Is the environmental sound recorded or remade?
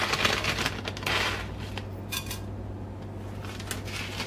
recorded